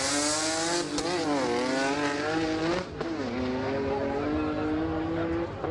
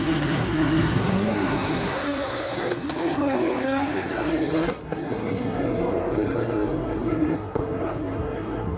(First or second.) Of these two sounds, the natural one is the first